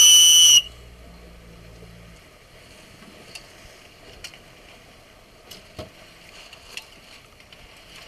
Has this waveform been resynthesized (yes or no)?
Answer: no